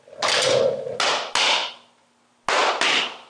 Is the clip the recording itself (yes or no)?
yes